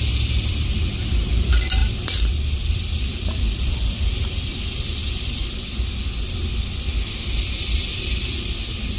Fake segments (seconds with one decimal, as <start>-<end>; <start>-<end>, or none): 0.0-1.8; 2.7-9.0